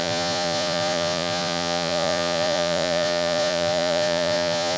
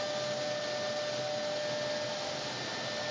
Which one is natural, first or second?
second